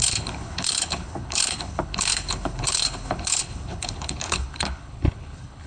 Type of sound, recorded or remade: remade